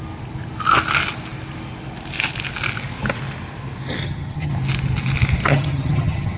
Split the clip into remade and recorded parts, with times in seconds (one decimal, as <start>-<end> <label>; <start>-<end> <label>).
0.0-4.0 recorded; 4.0-4.5 remade; 4.5-5.5 recorded; 5.5-6.4 remade